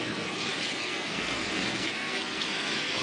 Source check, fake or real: fake